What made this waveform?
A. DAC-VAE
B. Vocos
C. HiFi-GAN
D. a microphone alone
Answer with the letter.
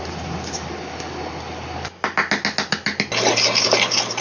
D